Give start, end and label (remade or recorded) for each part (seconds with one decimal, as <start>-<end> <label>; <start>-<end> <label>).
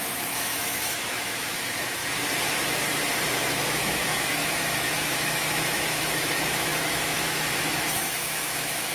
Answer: 0.0-2.0 remade; 2.0-3.3 recorded; 3.3-8.9 remade